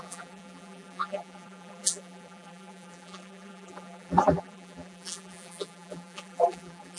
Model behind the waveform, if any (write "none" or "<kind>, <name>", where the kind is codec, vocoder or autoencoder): vocoder, BigVGAN v2